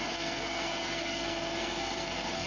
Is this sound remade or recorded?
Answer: remade